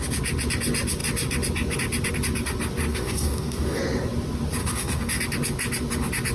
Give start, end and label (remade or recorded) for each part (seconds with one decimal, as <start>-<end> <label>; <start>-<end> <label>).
0.0-2.9 recorded; 2.9-3.8 remade; 3.8-4.6 recorded; 4.6-5.2 remade; 5.2-6.3 recorded